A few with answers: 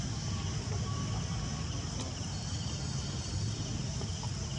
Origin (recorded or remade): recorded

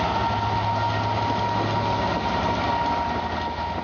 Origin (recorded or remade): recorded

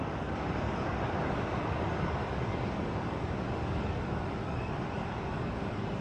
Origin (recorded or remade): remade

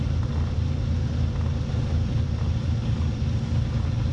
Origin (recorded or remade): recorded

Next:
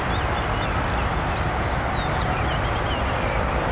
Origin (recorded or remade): recorded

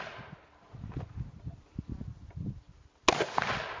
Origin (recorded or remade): recorded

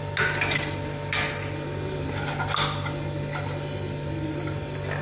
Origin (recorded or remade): recorded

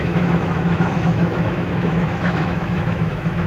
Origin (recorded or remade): remade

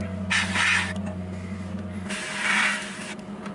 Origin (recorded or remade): recorded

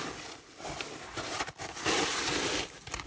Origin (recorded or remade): recorded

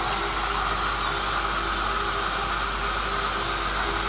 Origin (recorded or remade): recorded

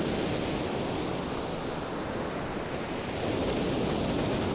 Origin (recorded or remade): recorded